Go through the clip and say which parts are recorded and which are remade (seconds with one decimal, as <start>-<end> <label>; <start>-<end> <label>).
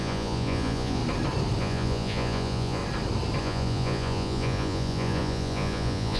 0.0-1.0 remade; 1.0-1.6 recorded; 1.6-2.8 remade; 2.8-3.4 recorded; 3.4-6.2 remade